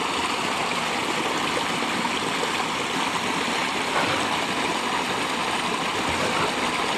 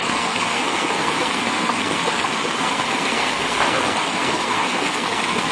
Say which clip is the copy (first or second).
second